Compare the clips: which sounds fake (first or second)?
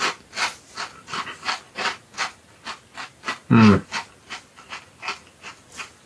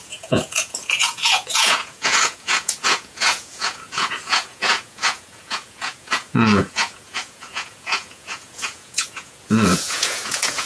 second